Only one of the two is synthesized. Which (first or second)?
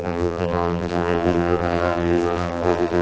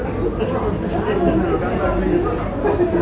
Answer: first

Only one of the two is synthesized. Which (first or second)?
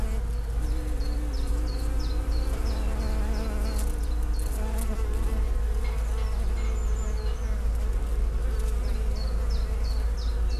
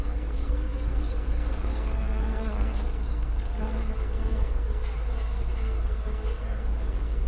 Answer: second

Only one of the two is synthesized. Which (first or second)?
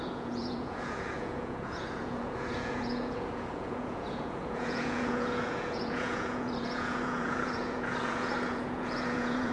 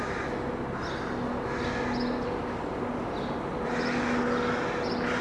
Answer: first